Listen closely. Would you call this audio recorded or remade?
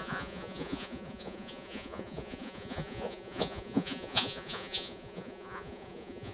remade